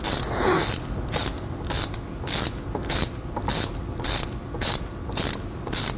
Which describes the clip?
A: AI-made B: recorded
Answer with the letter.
B